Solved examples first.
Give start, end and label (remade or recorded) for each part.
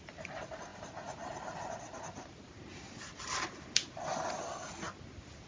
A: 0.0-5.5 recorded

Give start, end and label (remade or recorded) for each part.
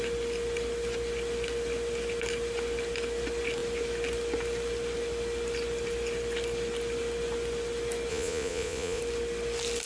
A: 0.0-8.1 recorded; 8.1-9.0 remade; 9.0-9.9 recorded